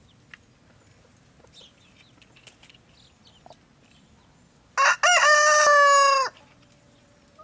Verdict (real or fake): real